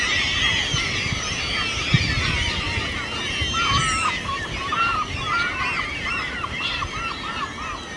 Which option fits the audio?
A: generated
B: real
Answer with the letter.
B